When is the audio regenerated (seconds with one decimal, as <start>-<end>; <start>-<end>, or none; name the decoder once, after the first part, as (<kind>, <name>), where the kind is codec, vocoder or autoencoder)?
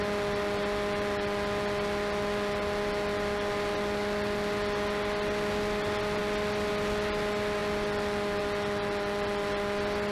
none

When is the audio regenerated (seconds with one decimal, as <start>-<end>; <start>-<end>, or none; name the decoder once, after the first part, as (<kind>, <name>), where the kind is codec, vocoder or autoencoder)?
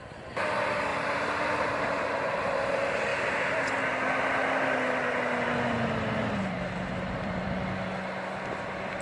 0.0-3.1 (vocoder, BigVGAN v2); 6.4-9.0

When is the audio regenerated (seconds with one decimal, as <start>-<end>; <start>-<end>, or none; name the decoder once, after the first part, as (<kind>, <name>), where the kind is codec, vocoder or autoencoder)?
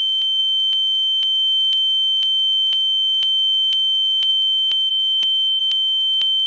4.9-5.6 (autoencoder, DAC-VAE)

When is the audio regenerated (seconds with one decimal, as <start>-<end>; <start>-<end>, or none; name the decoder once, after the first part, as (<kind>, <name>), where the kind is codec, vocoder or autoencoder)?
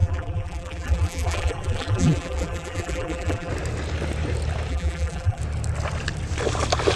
0.0-3.5 (vocoder, BigVGAN v2); 4.7-5.4